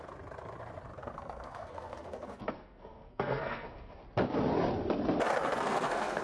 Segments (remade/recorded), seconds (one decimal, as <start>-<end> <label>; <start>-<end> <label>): 0.0-1.0 recorded; 1.0-4.0 remade; 4.0-5.5 recorded; 5.5-6.2 remade